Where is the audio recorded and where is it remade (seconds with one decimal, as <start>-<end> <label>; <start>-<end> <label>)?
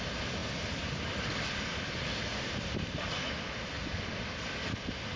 0.0-5.2 recorded